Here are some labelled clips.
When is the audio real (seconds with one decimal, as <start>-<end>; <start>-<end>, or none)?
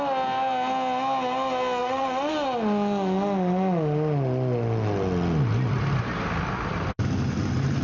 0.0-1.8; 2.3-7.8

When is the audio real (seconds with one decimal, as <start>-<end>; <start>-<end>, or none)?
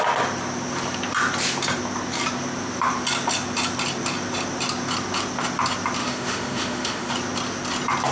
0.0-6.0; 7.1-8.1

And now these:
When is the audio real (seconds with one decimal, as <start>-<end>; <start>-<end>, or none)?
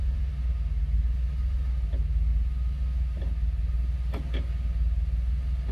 0.0-5.7